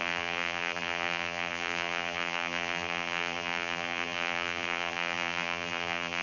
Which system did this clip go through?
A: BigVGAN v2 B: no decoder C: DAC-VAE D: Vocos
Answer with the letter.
A